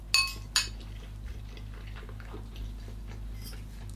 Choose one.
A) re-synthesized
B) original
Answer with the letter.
B